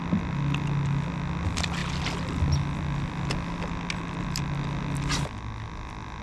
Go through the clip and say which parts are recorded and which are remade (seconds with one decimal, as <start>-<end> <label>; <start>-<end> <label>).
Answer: 0.0-6.2 recorded